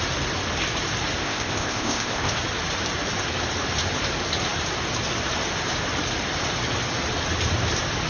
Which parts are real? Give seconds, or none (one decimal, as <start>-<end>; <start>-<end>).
0.0-1.2; 2.4-8.1